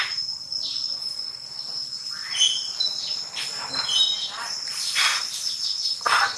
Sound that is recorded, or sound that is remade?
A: recorded